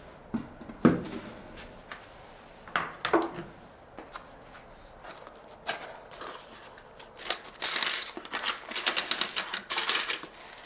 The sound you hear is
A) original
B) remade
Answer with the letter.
A